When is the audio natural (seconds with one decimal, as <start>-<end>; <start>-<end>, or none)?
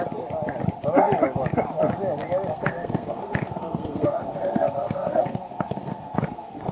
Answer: 0.0-2.5